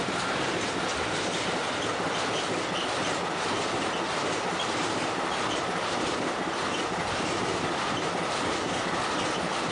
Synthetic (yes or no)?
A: no